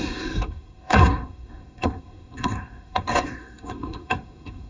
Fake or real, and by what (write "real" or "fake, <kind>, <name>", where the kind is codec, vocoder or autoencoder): fake, codec, SNAC